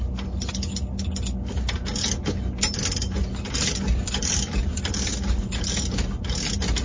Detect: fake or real real